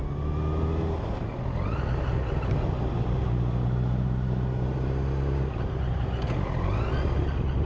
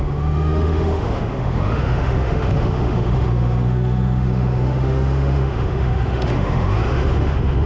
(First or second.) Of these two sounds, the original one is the first